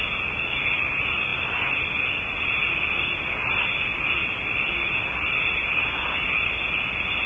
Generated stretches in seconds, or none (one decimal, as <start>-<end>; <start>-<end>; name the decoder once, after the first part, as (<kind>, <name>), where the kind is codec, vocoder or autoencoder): none